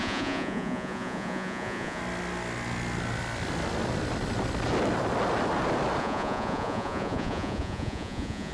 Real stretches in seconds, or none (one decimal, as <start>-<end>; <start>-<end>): 2.0-6.0